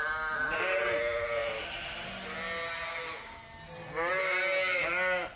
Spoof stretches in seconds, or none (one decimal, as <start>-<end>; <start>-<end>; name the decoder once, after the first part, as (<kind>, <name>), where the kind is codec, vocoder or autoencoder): none

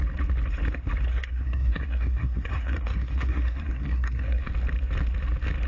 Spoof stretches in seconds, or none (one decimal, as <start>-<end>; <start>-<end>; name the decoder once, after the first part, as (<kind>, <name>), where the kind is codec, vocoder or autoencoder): 1.1-4.5 (codec, SNAC)